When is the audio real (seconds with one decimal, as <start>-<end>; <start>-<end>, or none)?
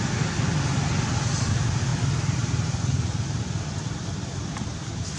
0.0-1.9; 4.4-5.2